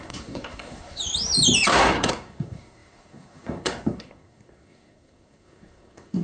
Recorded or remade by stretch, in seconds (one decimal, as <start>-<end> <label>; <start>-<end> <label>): 0.0-1.0 remade; 1.0-1.7 recorded; 1.7-6.2 remade